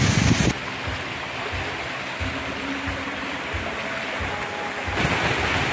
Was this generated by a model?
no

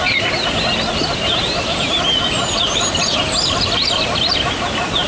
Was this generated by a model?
no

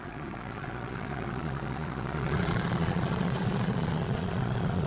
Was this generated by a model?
yes